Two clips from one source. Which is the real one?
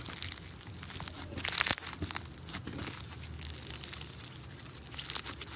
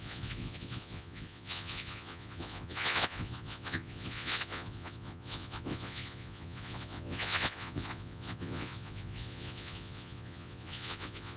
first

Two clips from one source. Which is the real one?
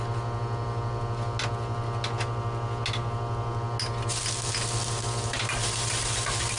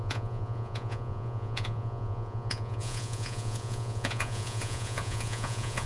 first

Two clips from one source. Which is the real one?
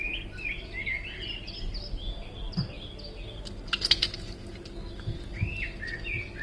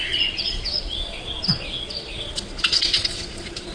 first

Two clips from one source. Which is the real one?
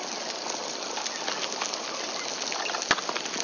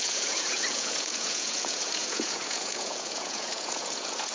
first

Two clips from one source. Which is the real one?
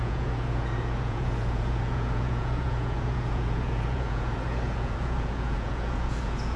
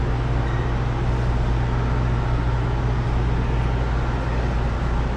second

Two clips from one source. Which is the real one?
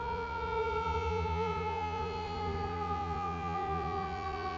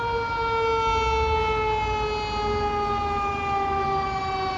second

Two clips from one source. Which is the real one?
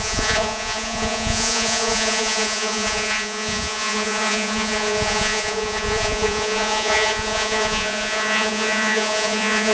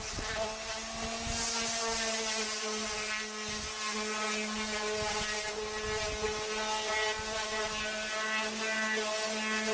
second